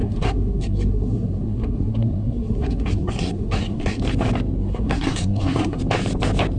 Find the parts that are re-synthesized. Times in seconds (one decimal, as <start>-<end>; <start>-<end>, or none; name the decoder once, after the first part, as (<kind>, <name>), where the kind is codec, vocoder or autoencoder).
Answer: 0.0-4.0 (codec, SNAC); 4.6-5.8